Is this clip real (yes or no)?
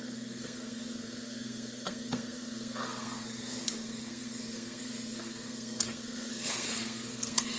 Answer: no